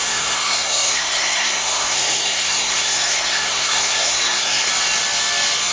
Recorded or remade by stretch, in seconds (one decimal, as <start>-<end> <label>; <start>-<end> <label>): 0.0-4.7 remade; 4.7-5.7 recorded